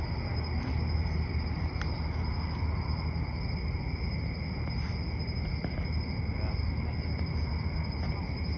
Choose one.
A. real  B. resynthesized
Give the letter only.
A